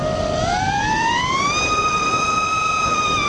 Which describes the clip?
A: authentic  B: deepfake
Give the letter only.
A